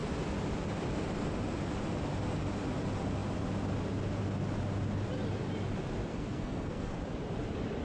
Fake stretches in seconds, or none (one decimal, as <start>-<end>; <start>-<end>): 6.1-7.0